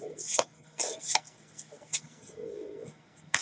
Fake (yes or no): yes